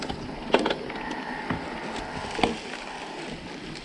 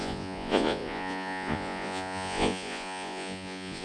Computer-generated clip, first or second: second